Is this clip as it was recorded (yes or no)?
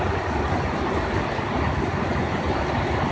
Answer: yes